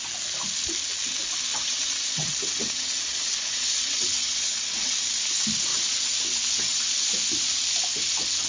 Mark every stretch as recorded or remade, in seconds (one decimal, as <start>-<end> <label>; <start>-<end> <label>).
0.0-1.5 recorded; 1.5-5.0 remade; 5.0-5.7 recorded; 5.7-7.0 remade; 7.0-8.5 recorded